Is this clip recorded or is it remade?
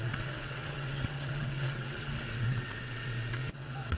remade